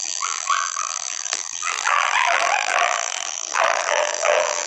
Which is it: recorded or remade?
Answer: remade